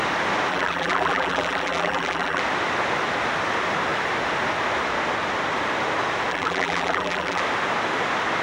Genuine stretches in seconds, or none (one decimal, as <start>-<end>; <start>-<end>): 0.0-0.5; 2.4-6.3; 7.4-8.4